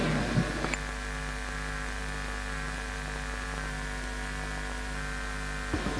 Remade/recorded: recorded